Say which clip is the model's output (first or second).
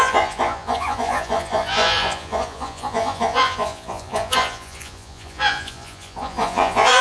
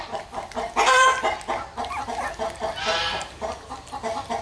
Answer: first